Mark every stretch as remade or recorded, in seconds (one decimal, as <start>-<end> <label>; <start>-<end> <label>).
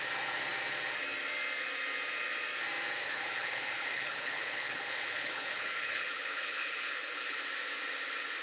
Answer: 0.0-3.0 recorded; 3.0-7.5 remade; 7.5-8.4 recorded